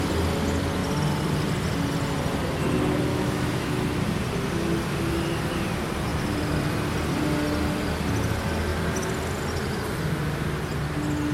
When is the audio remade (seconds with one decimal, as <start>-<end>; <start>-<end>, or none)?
3.1-3.8